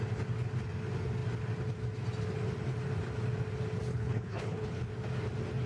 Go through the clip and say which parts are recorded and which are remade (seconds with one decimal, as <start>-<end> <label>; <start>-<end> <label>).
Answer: 0.0-3.9 recorded; 3.9-4.9 remade; 4.9-5.7 recorded